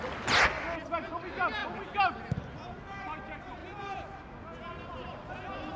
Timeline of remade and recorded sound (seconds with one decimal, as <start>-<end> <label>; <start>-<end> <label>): 0.0-5.8 recorded